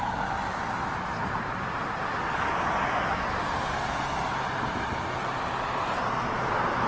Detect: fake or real real